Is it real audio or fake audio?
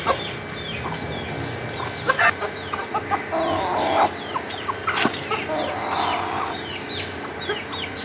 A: real